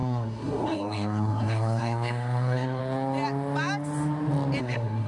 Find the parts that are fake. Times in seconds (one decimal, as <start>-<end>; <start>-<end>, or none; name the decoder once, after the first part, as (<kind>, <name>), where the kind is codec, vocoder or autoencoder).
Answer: 0.0-2.8 (codec, SNAC); 4.6-5.1